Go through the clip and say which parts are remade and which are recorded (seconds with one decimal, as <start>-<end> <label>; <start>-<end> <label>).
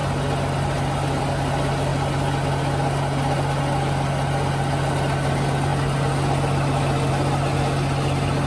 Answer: 0.0-8.5 recorded